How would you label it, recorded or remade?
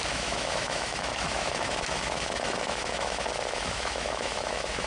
remade